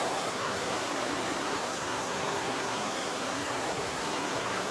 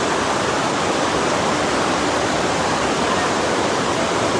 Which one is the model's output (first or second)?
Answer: first